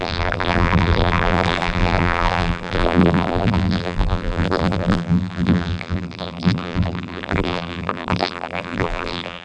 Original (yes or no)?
no